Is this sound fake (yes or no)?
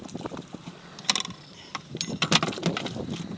no